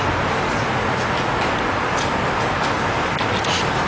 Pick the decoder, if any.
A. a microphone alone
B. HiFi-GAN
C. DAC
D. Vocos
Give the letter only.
A